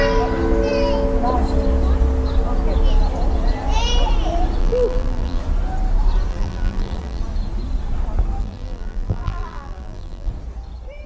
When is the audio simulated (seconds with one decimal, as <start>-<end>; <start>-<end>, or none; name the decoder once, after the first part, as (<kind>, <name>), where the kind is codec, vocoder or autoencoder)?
4.6-5.4 (vocoder, BigVGAN v2); 6.3-7.2; 8.4-10.3